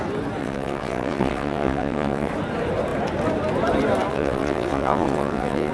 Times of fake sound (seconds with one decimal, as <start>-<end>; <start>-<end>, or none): 0.4-2.3; 4.1-5.7